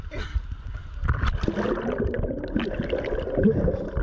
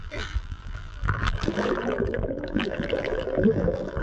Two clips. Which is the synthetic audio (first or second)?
second